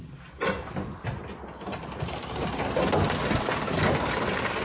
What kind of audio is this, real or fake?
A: real